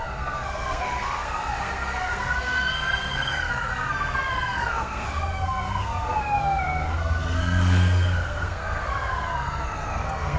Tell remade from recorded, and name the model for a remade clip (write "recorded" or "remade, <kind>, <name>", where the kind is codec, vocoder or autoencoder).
remade, codec, SNAC